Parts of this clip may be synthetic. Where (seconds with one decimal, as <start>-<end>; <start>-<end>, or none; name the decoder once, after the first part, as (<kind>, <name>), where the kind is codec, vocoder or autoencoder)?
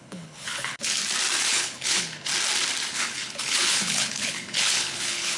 0.0-1.0 (codec, HILCodec); 1.5-2.3; 2.9-5.4